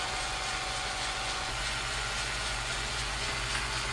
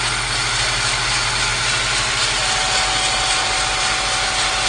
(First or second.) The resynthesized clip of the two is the first